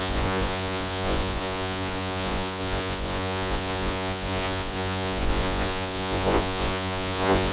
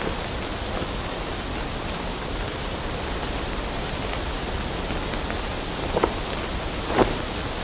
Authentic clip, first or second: second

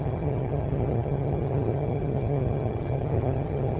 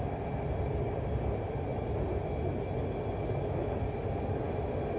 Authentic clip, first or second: second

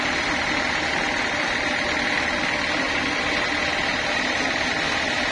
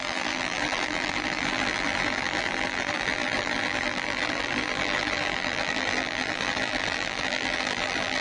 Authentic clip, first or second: first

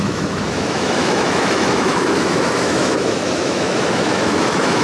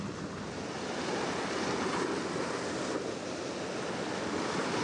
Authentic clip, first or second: second